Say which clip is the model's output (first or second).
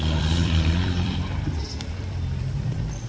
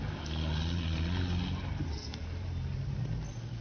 first